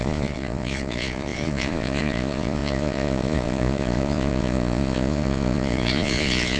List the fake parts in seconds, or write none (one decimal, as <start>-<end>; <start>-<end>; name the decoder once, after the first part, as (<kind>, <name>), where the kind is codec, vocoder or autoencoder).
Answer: 0.0-6.6 (vocoder, Vocos)